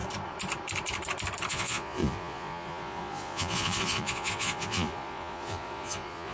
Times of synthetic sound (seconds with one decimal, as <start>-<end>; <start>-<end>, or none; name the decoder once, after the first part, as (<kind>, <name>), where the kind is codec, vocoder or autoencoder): 1.5-6.3 (vocoder, Vocos)

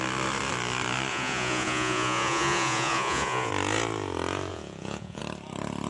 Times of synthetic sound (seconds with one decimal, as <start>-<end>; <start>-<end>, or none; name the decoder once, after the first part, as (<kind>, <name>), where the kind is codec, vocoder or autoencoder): 1.1-3.5 (vocoder, Vocos); 4.5-5.2